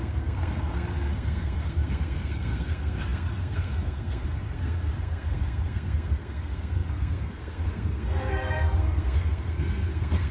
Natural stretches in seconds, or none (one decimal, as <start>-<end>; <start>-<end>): none